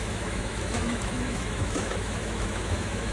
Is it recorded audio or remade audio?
remade